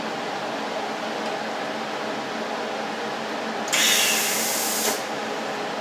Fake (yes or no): no